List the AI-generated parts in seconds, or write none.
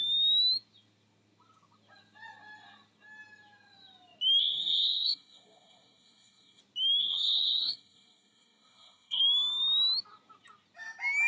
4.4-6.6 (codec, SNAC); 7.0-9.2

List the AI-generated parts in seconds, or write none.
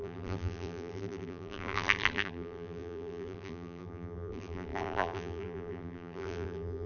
0.0-6.9 (vocoder, BigVGAN v2)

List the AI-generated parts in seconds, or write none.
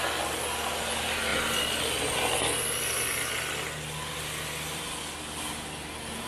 none